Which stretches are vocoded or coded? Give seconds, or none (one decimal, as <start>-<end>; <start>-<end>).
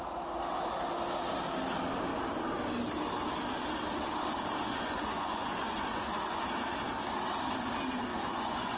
4.7-6.4; 8.1-8.8